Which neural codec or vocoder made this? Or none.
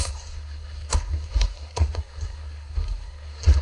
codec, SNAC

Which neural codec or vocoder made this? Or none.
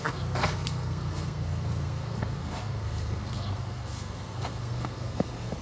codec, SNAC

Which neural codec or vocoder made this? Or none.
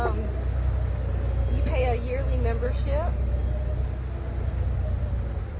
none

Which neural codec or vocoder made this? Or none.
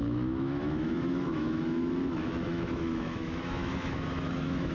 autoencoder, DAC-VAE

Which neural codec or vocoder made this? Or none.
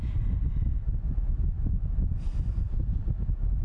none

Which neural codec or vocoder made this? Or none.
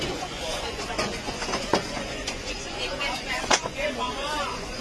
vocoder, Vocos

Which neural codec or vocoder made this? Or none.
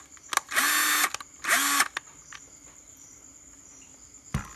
none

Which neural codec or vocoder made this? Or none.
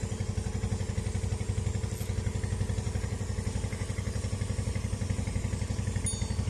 none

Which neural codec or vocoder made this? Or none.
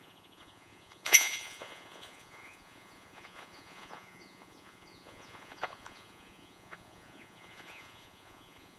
vocoder, Vocos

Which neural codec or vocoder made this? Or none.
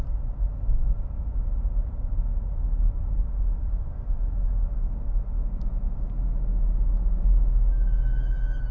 none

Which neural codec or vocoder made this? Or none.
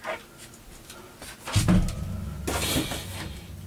none